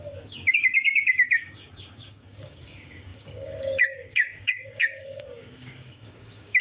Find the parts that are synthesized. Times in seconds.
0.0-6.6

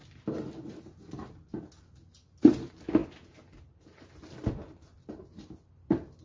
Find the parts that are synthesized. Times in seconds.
none

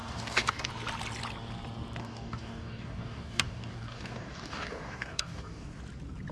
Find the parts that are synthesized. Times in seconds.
0.0-0.7; 2.0-5.8